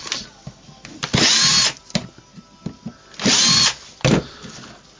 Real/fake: real